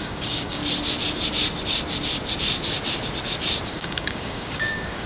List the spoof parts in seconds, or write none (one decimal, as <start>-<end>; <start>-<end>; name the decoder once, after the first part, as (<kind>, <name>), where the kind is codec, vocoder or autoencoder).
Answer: 0.0-0.6 (codec, DAC); 3.7-5.1